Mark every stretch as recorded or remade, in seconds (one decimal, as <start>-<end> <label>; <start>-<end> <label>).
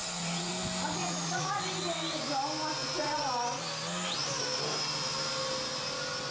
0.0-0.5 remade; 0.5-1.0 recorded; 1.0-1.6 remade; 1.6-2.8 recorded; 2.8-3.3 remade; 3.3-6.3 recorded